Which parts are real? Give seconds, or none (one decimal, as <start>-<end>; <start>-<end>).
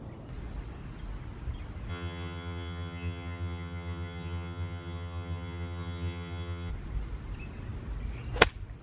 0.0-1.9; 6.7-8.8